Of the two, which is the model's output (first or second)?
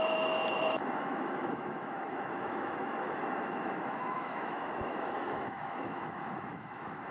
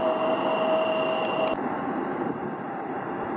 first